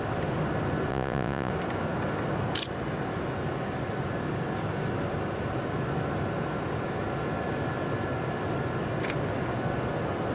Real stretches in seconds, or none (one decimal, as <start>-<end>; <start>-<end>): 0.0-0.9; 1.5-10.3